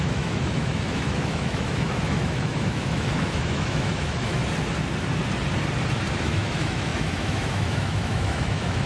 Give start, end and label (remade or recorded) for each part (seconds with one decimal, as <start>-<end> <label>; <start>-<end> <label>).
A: 0.0-4.4 remade; 4.4-6.2 recorded; 6.2-8.9 remade